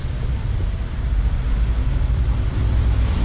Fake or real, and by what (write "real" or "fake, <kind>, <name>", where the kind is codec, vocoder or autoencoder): fake, vocoder, BigVGAN v2